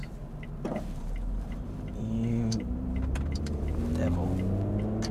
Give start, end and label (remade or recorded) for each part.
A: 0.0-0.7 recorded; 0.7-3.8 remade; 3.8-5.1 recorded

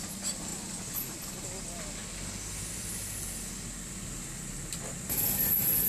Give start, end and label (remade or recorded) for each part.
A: 0.0-5.9 recorded

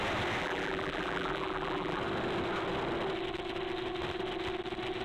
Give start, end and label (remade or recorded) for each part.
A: 0.0-0.4 recorded; 0.4-2.0 remade; 2.0-5.0 recorded

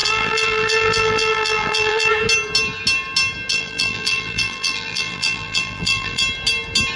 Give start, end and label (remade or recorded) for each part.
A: 0.0-2.1 remade; 2.1-3.5 recorded; 3.5-6.2 remade; 6.2-7.0 recorded

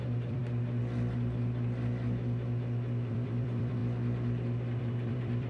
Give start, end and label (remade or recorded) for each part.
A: 0.0-0.4 remade; 0.4-3.1 recorded; 3.1-3.8 remade; 3.8-4.8 recorded; 4.8-5.5 remade